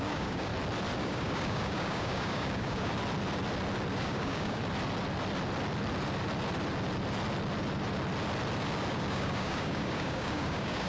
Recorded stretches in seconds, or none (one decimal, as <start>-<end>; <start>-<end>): 0.5-1.0; 2.9-4.0; 4.6-8.9